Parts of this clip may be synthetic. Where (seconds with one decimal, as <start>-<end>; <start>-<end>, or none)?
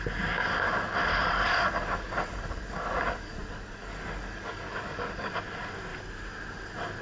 1.1-5.3